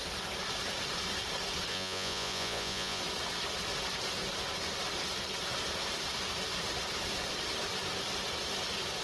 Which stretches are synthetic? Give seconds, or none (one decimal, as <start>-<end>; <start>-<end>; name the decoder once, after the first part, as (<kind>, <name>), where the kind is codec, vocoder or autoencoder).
1.7-3.0 (vocoder, Vocos)